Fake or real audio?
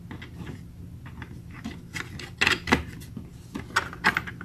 real